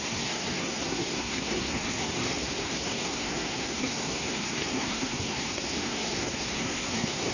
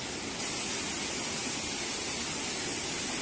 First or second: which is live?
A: second